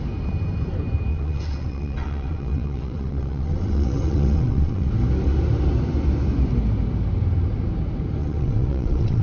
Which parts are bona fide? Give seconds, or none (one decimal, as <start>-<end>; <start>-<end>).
0.0-1.1; 4.9-8.2